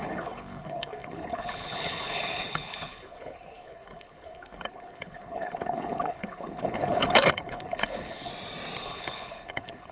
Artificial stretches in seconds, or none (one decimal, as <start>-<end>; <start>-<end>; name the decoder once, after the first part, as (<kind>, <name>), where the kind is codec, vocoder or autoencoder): 0.0-8.3 (codec, HILCodec); 8.8-9.9